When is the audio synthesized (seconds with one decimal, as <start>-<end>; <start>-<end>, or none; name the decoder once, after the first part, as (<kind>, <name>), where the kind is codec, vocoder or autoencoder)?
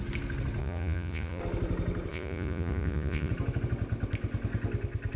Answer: 0.6-1.4 (vocoder, Vocos); 2.1-3.3